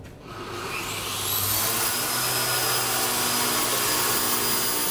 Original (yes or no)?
yes